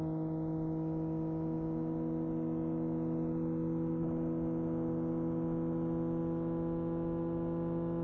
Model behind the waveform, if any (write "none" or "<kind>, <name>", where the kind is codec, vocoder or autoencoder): none